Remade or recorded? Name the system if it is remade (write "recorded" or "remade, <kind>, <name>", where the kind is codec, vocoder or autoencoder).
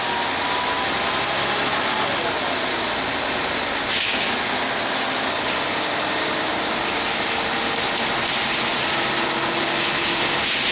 recorded